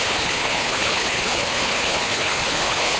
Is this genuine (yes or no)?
no